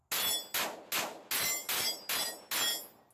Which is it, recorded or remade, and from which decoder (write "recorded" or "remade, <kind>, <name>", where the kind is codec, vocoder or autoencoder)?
recorded